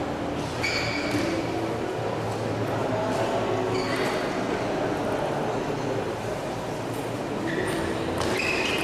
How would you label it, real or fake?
real